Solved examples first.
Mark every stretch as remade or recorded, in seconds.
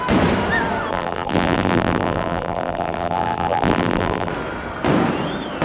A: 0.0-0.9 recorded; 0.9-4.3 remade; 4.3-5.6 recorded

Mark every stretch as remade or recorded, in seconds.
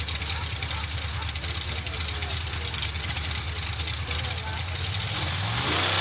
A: 0.0-6.0 recorded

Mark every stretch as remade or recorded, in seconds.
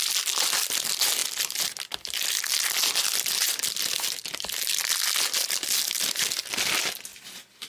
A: 0.0-7.7 recorded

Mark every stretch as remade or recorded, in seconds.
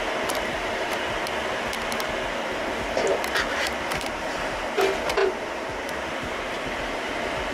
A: 0.0-0.5 recorded; 0.5-1.2 remade; 1.2-2.8 recorded; 2.8-4.6 remade; 4.6-5.2 recorded; 5.2-5.9 remade; 5.9-7.5 recorded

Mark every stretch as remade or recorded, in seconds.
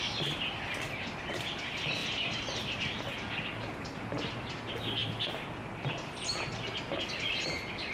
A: 0.0-2.0 recorded; 2.0-2.8 remade; 2.8-5.0 recorded; 5.0-6.5 remade; 6.5-7.9 recorded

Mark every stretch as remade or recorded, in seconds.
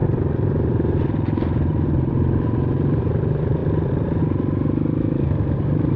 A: 0.0-6.0 recorded